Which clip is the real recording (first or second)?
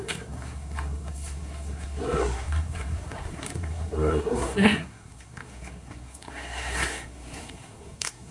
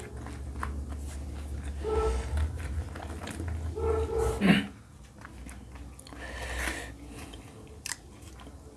second